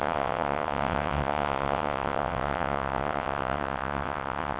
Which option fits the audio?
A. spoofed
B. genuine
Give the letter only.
A